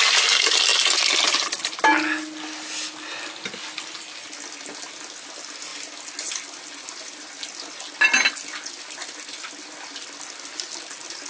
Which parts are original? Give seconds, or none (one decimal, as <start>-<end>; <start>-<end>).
0.0-11.3

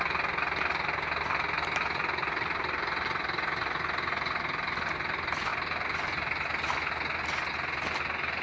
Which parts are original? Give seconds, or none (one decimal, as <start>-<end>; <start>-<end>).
0.0-8.4